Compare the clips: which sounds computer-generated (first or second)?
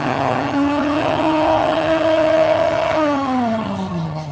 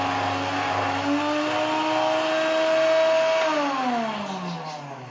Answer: first